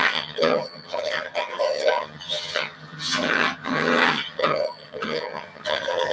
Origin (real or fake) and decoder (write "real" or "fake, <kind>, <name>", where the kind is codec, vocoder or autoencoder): fake, vocoder, HiFi-GAN